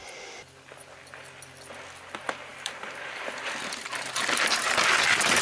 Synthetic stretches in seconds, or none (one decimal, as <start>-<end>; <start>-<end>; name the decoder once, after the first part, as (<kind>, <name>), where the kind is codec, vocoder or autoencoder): 2.5-4.6 (vocoder, BigVGAN v2)